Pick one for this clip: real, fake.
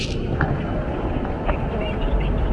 real